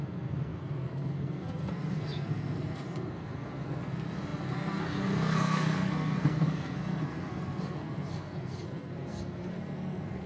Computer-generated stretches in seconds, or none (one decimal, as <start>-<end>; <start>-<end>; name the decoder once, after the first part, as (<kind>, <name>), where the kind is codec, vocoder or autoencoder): 0.0-10.3 (codec, SNAC)